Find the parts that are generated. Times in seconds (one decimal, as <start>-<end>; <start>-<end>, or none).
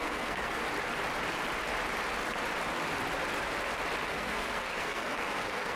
0.0-0.6; 4.1-5.8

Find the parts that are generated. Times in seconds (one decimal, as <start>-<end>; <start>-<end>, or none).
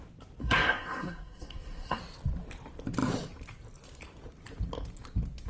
0.4-2.0